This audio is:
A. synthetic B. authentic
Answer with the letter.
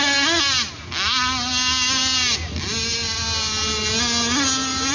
B